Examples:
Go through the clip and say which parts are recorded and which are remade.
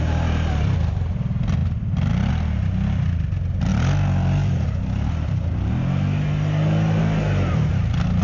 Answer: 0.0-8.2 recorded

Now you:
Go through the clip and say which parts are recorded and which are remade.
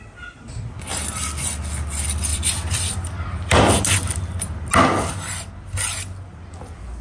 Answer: 0.0-2.3 recorded; 2.3-3.6 remade; 3.6-7.0 recorded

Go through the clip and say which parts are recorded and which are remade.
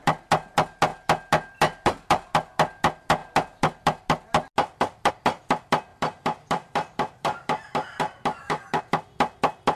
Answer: 0.0-5.9 recorded; 5.9-8.8 remade; 8.8-9.8 recorded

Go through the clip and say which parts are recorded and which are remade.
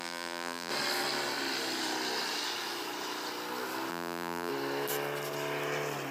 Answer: 0.0-0.7 remade; 0.7-3.9 recorded; 3.9-4.5 remade; 4.5-6.1 recorded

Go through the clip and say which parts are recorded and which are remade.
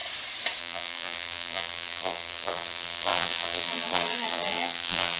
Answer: 0.0-0.6 recorded; 0.6-5.2 remade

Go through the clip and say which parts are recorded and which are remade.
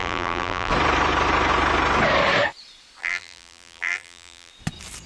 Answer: 0.0-0.7 remade; 0.7-3.0 recorded; 3.0-4.5 remade; 4.5-5.1 recorded